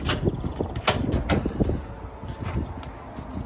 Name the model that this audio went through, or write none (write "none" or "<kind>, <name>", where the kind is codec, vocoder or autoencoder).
none